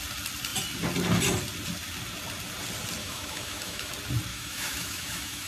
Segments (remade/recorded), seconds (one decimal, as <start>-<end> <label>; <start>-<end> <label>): 0.0-3.0 recorded; 3.0-3.9 remade; 3.9-4.3 recorded; 4.3-5.5 remade